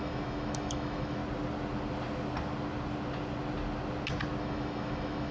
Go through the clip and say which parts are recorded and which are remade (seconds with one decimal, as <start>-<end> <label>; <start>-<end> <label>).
0.0-1.2 remade; 1.2-4.4 recorded; 4.4-5.3 remade